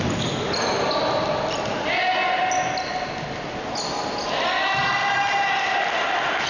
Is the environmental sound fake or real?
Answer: real